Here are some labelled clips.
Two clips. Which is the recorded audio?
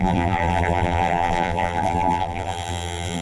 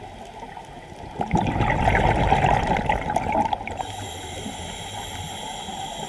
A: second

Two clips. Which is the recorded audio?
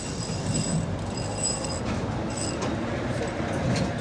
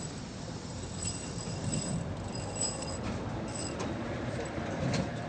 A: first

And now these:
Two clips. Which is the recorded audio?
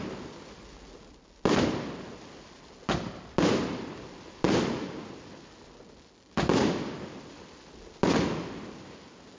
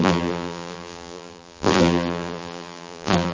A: first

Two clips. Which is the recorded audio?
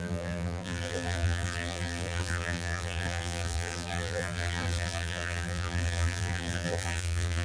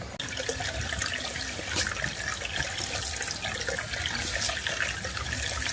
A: second